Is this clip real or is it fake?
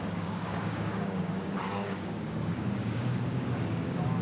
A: fake